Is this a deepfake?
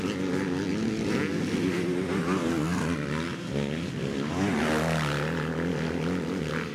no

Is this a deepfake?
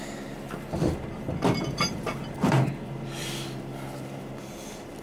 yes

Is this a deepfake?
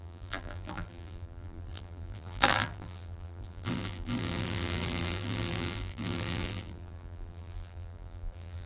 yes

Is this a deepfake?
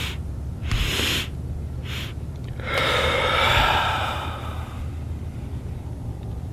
no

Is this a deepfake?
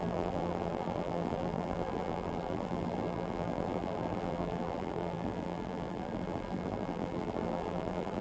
yes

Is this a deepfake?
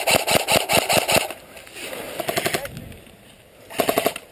no